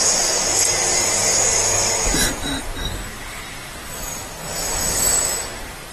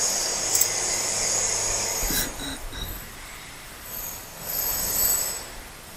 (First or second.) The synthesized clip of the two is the second